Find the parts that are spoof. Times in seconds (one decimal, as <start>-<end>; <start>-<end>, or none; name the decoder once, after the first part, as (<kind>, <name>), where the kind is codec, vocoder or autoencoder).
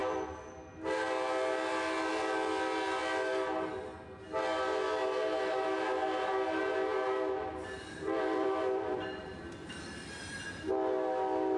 7.5-10.7 (vocoder, BigVGAN v2)